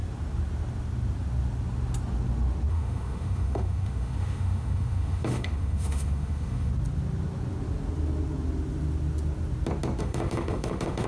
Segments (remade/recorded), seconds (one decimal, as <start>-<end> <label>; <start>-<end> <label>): 0.0-2.7 recorded; 2.7-6.7 remade; 6.7-10.0 recorded; 10.0-11.1 remade

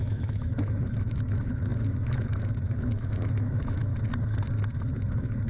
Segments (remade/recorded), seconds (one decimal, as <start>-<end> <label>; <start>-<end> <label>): 0.0-3.9 remade; 3.9-5.1 recorded; 5.1-5.5 remade

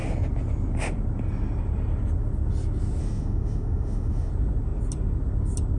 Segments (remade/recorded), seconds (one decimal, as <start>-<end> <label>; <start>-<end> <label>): 0.0-3.0 recorded; 3.0-4.3 remade; 4.3-5.8 recorded

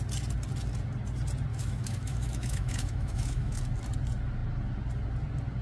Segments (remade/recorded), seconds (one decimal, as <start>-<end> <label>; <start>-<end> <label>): 0.0-1.5 recorded; 1.5-3.6 remade; 3.6-5.6 recorded

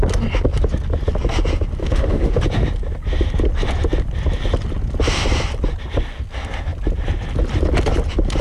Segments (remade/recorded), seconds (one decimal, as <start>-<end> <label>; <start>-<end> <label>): 0.0-1.8 recorded; 1.8-2.4 remade; 2.4-8.4 recorded

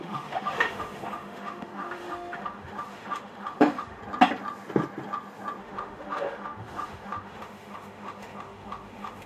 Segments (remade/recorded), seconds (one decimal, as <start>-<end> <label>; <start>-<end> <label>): 0.0-4.0 remade; 4.0-5.6 recorded; 5.6-9.3 remade

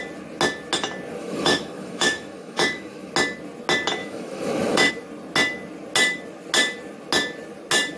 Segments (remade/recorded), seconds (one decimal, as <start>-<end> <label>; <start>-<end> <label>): 0.0-1.2 recorded; 1.2-3.1 remade; 3.1-4.0 recorded; 4.0-4.9 remade; 4.9-8.0 recorded

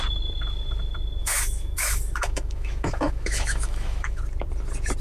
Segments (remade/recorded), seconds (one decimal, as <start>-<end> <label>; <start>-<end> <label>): 0.0-1.2 recorded; 1.2-4.2 remade; 4.2-5.0 recorded